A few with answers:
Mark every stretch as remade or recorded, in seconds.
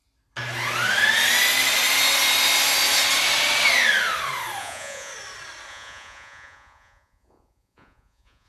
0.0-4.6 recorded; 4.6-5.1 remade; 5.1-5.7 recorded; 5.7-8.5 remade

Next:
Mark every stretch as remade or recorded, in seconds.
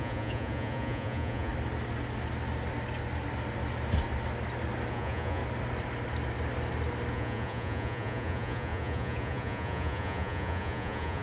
0.0-1.5 remade; 1.5-4.9 recorded; 4.9-5.4 remade; 5.4-7.1 recorded; 7.1-11.2 remade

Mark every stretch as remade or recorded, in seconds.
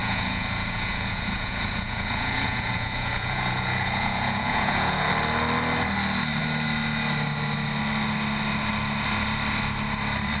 0.0-5.1 remade; 5.1-10.4 recorded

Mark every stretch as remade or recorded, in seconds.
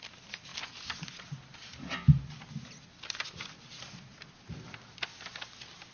0.0-5.9 recorded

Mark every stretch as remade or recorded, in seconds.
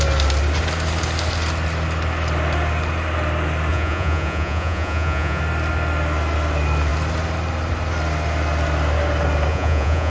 0.0-3.7 recorded; 3.7-5.4 remade; 5.4-9.5 recorded; 9.5-10.1 remade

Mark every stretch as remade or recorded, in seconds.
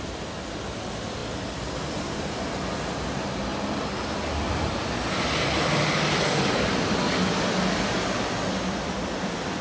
0.0-9.6 recorded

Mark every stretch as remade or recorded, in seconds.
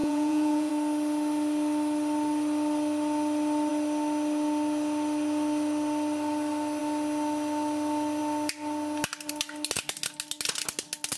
0.0-0.7 remade; 0.7-11.2 recorded